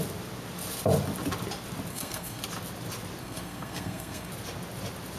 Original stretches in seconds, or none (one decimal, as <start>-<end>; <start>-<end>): 0.0-1.9; 2.4-3.2; 4.3-5.2